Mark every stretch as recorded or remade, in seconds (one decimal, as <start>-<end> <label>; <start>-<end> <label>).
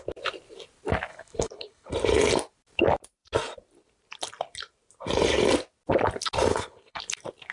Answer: 0.0-1.1 recorded; 1.1-1.9 remade; 1.9-6.5 recorded; 6.5-7.0 remade; 7.0-7.5 recorded